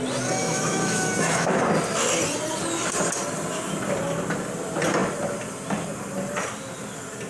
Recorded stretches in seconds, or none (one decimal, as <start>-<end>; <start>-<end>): 0.0-0.4; 1.6-7.3